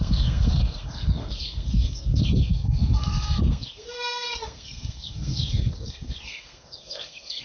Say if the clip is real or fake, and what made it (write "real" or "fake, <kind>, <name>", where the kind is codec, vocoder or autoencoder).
fake, codec, SNAC